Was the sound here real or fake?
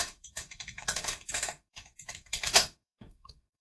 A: fake